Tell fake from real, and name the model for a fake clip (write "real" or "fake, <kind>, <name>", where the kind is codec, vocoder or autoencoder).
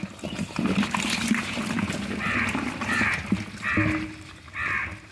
real